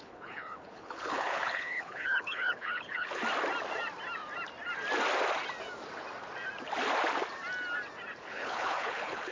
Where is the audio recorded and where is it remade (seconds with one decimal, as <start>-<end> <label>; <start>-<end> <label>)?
0.0-3.2 remade; 3.2-8.2 recorded; 8.2-9.3 remade